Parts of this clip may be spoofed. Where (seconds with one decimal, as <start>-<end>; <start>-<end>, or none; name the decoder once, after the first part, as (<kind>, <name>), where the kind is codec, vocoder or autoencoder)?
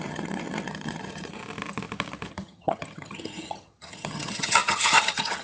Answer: 0.0-1.4 (vocoder, HiFi-GAN); 2.3-5.4